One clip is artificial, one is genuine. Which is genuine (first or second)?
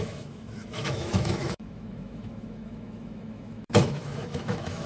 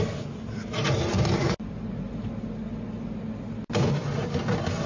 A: second